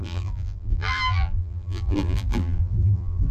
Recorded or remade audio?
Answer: remade